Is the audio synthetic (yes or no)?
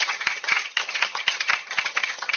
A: yes